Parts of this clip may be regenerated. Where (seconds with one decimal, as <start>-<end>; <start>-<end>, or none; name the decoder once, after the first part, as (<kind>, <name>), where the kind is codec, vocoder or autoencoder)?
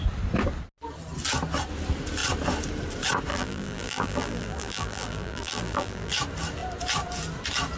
3.3-6.1 (vocoder, BigVGAN v2)